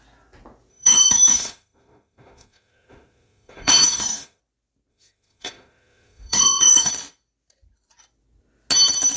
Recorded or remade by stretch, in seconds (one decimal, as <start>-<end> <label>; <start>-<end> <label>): 0.0-0.7 recorded; 0.7-4.4 remade; 4.4-4.9 recorded; 4.9-6.9 remade; 6.9-9.2 recorded